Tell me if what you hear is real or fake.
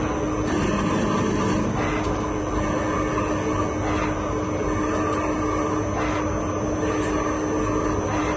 real